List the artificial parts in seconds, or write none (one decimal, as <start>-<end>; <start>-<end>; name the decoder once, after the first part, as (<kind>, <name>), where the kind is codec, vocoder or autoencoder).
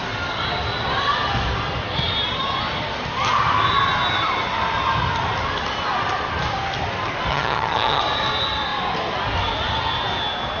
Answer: 7.3-8.0 (vocoder, HiFi-GAN)